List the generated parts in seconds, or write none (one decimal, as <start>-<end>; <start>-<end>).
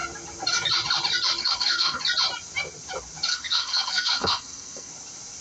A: 1.4-2.0; 3.3-4.9